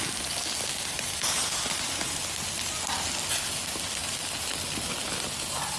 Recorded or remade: recorded